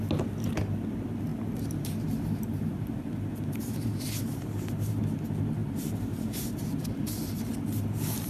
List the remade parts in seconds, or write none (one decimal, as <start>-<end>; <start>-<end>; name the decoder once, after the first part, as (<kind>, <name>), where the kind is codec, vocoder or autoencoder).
1.3-5.0 (vocoder, BigVGAN v2); 5.6-7.2